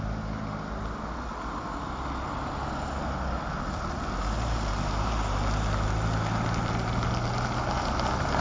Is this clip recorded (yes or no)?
yes